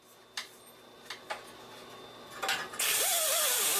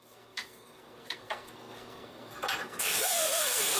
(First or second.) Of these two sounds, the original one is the first